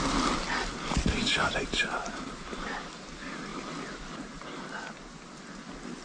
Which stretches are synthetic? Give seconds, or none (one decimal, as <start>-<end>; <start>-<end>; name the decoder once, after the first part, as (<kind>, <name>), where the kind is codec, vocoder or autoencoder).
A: 1.1-2.3 (vocoder, BigVGAN v2)